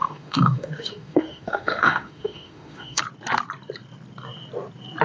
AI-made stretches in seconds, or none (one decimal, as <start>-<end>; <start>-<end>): 0.0-3.0